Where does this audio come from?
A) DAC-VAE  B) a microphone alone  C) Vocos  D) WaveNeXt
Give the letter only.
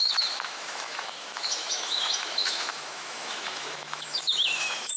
A